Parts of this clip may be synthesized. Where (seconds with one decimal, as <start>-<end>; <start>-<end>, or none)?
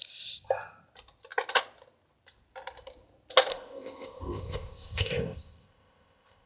3.5-6.5